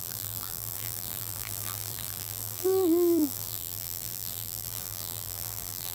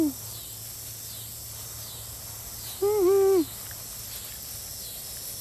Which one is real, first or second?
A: second